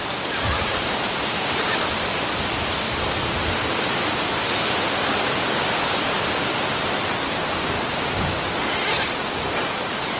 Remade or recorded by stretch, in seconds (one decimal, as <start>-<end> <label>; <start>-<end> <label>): 0.0-10.2 recorded